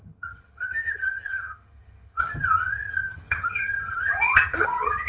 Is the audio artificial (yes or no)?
yes